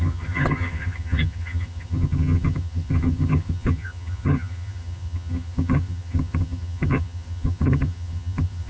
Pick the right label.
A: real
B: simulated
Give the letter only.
B